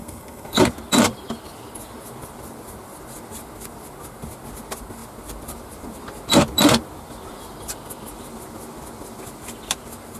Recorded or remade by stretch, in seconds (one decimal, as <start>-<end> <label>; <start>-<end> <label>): 0.0-0.6 remade; 0.6-10.2 recorded

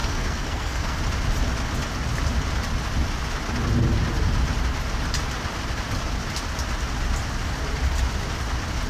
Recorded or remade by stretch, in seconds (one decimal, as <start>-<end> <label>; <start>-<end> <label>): 0.0-1.0 remade; 1.0-8.9 recorded

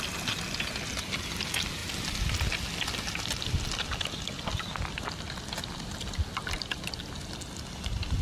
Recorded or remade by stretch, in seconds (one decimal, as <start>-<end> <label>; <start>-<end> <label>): 0.0-8.2 recorded

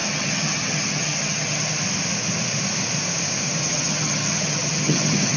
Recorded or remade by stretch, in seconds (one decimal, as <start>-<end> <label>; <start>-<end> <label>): 0.0-1.8 remade; 1.8-3.6 recorded; 3.6-5.4 remade

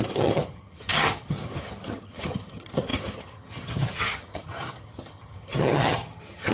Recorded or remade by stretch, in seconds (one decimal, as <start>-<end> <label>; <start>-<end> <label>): 0.0-6.5 remade

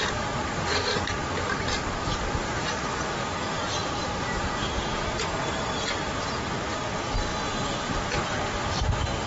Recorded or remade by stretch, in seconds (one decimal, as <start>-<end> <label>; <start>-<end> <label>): 0.0-9.3 recorded

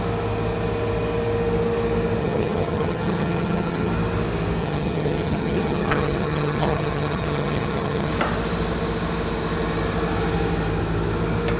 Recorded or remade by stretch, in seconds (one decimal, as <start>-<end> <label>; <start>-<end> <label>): 0.0-2.2 recorded; 2.2-3.9 remade; 3.9-4.6 recorded; 4.6-8.1 remade; 8.1-11.6 recorded

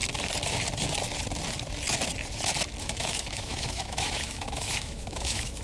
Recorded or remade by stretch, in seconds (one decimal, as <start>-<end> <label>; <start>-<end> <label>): 0.0-2.8 recorded; 2.8-5.6 remade